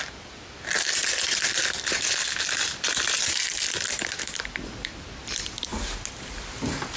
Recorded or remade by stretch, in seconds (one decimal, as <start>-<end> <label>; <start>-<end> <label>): 0.0-5.7 remade; 5.7-7.0 recorded